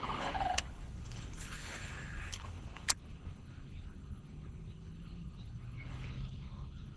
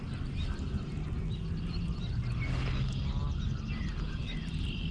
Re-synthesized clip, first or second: first